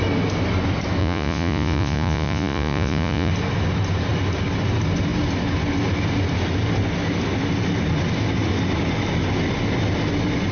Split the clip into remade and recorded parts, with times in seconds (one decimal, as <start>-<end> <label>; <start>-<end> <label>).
0.0-1.0 recorded; 1.0-3.3 remade; 3.3-10.5 recorded